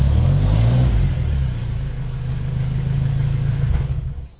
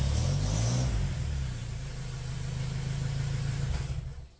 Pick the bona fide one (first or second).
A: second